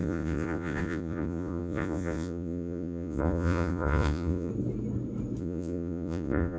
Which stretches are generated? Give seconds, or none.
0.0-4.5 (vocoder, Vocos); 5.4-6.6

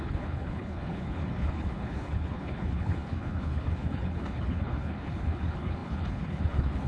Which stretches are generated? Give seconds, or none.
0.0-6.9 (codec, HILCodec)

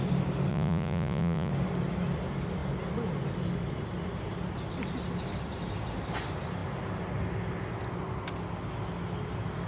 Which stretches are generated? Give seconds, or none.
0.5-1.5 (vocoder, Vocos)

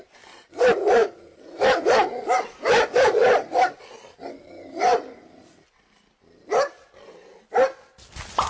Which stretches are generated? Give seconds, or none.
none

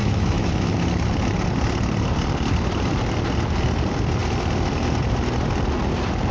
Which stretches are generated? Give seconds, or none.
0.0-0.7 (autoencoder, DAC-VAE)

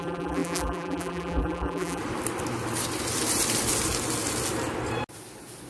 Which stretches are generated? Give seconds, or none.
0.0-2.0 (vocoder, BigVGAN v2)

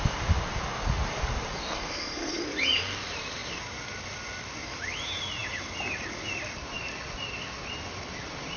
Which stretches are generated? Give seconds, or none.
1.6-2.4 (codec, SNAC)